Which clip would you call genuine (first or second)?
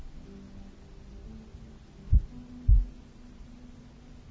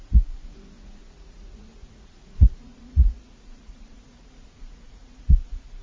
first